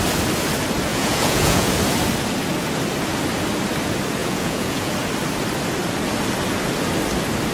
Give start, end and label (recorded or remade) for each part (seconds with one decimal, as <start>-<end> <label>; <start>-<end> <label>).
0.0-0.9 recorded; 0.9-1.7 remade; 1.7-4.2 recorded; 4.2-4.9 remade; 4.9-7.5 recorded